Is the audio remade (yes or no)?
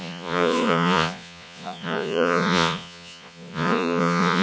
yes